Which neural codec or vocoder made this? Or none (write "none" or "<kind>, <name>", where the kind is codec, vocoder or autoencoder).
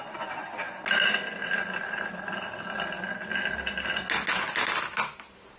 none